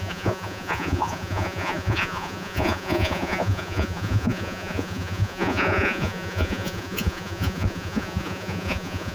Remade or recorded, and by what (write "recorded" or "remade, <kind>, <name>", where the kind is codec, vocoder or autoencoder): remade, vocoder, Vocos